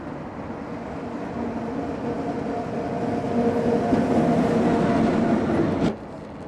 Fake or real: real